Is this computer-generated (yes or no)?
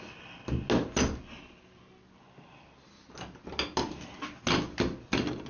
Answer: no